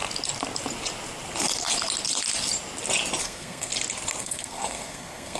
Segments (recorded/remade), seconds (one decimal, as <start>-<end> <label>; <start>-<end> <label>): 0.0-3.2 recorded; 3.2-3.7 remade; 3.7-4.2 recorded; 4.2-5.4 remade